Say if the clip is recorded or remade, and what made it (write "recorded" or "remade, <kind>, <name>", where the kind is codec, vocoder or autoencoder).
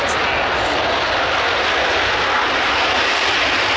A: recorded